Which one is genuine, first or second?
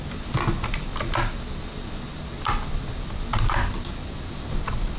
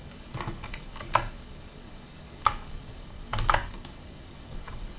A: first